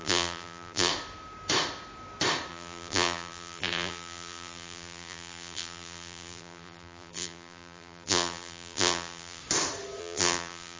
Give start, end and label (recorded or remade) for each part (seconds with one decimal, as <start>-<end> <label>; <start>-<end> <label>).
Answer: 0.0-0.9 remade; 0.9-2.5 recorded; 2.5-9.4 remade; 9.4-10.0 recorded; 10.0-10.8 remade